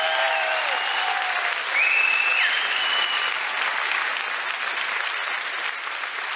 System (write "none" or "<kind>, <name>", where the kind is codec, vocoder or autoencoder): none